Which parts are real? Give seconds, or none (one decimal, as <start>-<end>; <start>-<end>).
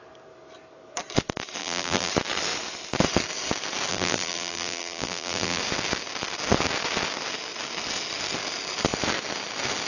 0.0-1.6; 2.1-3.9; 5.6-9.9